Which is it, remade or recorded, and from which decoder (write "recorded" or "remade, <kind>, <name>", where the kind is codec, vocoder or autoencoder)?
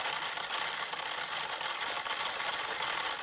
recorded